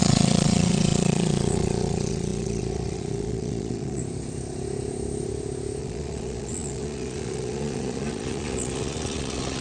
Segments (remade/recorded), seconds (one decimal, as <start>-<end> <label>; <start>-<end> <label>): 0.0-4.0 remade; 4.0-5.8 recorded; 5.8-9.6 remade